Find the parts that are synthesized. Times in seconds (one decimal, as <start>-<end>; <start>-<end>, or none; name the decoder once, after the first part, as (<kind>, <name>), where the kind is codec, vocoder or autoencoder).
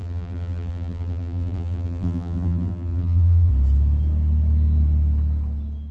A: 0.0-3.5 (vocoder, BigVGAN v2)